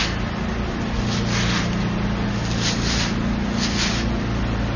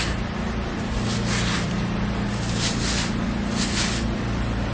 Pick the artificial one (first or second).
second